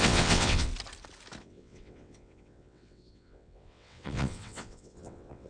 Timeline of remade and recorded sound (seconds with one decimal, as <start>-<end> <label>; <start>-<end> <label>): 0.0-0.7 remade; 0.7-1.4 recorded; 1.4-5.5 remade